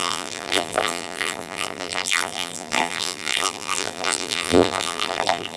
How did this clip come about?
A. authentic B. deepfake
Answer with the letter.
B